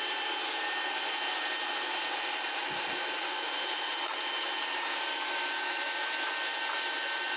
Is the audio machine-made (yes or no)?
no